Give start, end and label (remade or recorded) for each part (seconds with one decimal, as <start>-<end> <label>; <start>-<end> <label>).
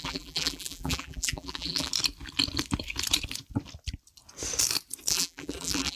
0.0-1.9 remade; 1.9-5.1 recorded; 5.1-6.0 remade